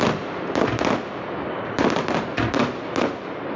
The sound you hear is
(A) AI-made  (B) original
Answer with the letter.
B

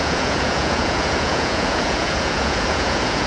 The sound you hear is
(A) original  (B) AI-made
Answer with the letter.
B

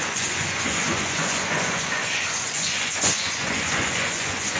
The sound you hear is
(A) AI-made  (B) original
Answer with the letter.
A